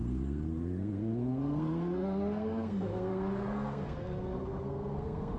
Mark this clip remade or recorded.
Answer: remade